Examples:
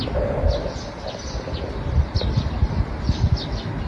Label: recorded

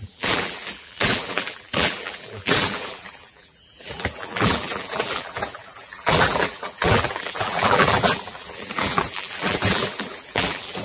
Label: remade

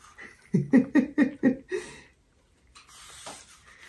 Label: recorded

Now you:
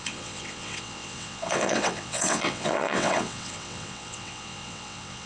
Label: remade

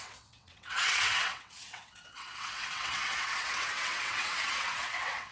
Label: remade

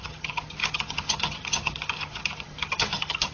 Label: remade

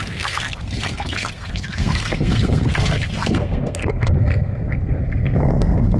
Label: remade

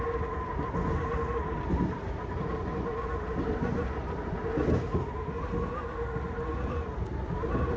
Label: recorded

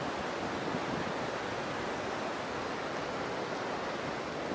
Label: recorded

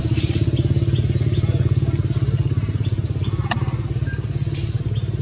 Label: recorded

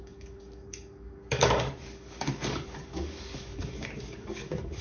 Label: remade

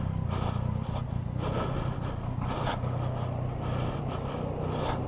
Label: recorded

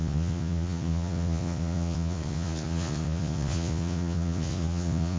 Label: remade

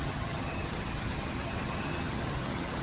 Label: remade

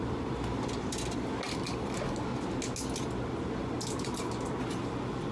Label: recorded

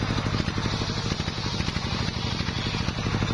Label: recorded